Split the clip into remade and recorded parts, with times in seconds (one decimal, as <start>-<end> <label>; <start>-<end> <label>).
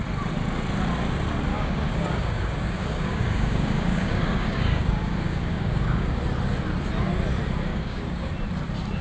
0.0-1.5 recorded; 1.5-6.2 remade; 6.2-7.7 recorded; 7.7-8.3 remade; 8.3-9.0 recorded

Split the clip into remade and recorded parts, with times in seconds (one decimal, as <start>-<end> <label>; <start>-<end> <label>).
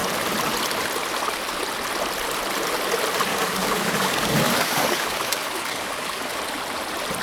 0.0-3.3 recorded; 3.3-6.4 remade; 6.4-7.2 recorded